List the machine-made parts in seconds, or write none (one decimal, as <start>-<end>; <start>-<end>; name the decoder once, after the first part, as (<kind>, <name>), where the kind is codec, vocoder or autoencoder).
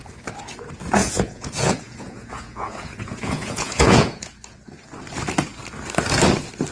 1.0-4.3 (vocoder, Vocos)